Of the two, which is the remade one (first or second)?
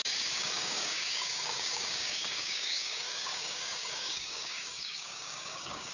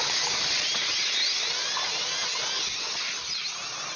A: first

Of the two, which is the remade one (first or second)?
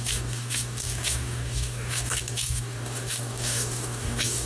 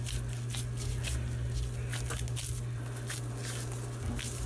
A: first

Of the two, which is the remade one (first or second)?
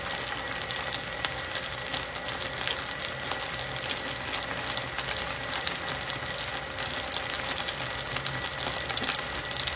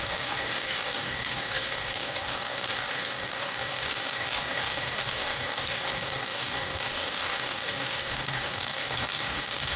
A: second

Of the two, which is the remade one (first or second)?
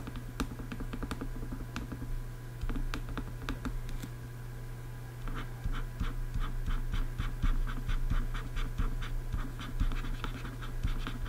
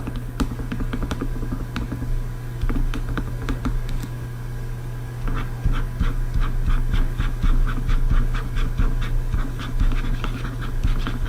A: second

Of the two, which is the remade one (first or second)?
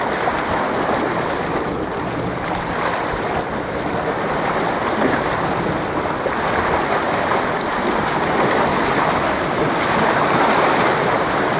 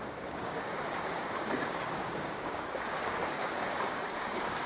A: second